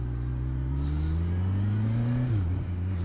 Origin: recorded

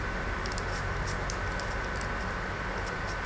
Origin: recorded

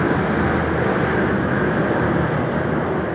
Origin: recorded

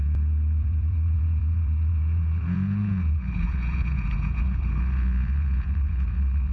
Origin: remade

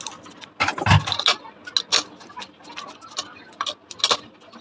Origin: recorded